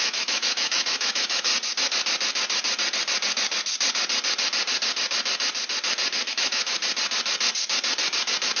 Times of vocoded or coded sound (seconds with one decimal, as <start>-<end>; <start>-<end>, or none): 0.0-1.5; 6.3-6.8